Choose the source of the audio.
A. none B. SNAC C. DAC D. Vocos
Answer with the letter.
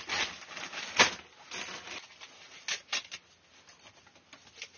A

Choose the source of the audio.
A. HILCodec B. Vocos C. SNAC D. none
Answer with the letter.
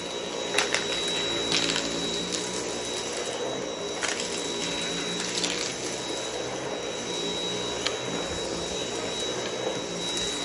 D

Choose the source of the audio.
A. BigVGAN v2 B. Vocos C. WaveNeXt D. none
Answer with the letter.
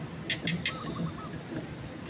D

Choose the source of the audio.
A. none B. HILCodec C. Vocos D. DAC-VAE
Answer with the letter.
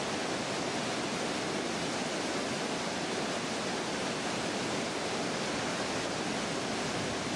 A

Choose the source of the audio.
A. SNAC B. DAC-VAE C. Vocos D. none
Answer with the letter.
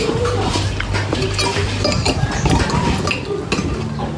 D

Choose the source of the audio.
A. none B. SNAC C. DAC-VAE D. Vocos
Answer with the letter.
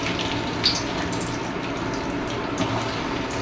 A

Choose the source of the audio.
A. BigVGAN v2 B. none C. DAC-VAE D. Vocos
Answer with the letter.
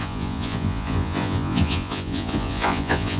D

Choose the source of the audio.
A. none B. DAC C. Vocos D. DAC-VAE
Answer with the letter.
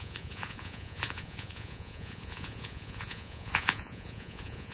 C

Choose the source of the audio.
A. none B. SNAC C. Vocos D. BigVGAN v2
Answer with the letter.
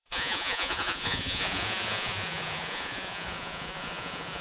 C